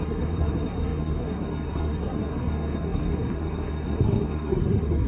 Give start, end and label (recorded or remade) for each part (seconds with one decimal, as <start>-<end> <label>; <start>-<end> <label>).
0.0-5.1 remade